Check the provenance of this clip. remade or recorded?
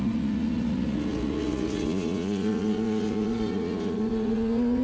remade